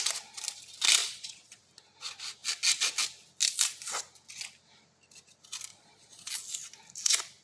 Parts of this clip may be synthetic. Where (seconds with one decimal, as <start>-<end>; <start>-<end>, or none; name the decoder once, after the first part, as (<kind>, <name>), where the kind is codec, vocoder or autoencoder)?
1.0-1.6 (vocoder, Vocos); 5.7-6.3

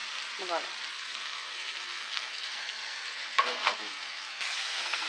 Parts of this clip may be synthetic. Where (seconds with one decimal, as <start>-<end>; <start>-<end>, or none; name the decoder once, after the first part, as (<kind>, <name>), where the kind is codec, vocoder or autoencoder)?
0.9-5.1 (codec, SNAC)

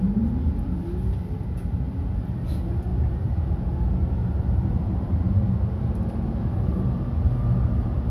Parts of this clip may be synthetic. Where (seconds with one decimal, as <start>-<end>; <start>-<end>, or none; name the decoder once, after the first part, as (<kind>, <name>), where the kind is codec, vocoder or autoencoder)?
2.9-3.4 (vocoder, BigVGAN v2); 4.2-5.2

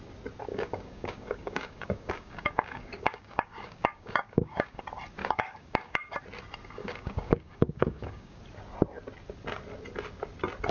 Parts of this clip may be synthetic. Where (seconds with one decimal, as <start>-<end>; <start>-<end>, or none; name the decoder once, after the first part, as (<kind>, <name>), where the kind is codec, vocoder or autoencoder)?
0.5-4.8 (codec, DAC); 5.2-6.1; 6.8-8.4

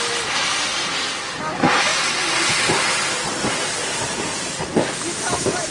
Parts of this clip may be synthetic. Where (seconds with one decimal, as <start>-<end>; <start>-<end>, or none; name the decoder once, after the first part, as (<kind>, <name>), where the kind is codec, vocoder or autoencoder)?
none

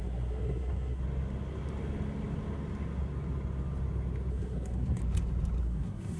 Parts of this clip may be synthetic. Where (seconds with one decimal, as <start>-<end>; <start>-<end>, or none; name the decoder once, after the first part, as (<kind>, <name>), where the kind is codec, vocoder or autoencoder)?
0.0-1.0 (codec, SNAC); 4.3-5.0; 5.6-6.2

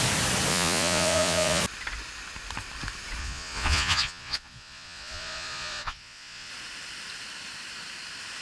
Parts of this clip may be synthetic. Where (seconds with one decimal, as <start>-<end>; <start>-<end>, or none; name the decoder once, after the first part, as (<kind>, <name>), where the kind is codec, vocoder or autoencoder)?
0.5-1.6 (vocoder, Vocos); 3.2-6.5

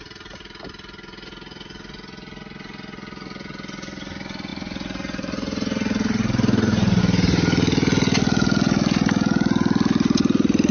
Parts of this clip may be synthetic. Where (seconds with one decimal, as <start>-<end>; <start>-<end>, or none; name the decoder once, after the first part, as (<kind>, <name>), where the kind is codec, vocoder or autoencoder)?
4.5-7.0 (vocoder, BigVGAN v2)